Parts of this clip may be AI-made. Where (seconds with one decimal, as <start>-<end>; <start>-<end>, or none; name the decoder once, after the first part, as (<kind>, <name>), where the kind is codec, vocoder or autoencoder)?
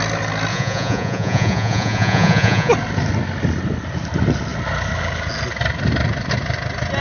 0.5-2.7 (vocoder, Vocos)